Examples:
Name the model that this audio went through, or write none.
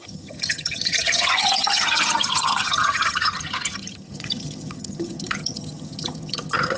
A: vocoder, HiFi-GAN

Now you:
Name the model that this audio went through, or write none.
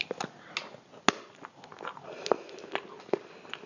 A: none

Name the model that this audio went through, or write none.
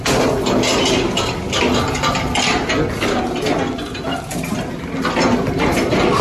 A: none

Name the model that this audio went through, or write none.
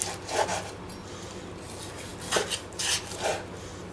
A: none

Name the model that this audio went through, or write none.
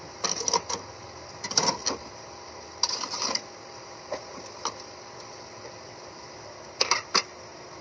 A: none